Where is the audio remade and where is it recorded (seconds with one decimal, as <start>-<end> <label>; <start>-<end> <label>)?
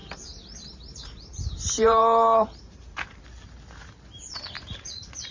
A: 0.0-3.2 remade; 3.2-5.3 recorded